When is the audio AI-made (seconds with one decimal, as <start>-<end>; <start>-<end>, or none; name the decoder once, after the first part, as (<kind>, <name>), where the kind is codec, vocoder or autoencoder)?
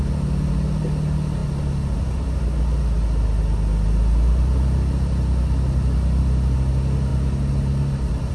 none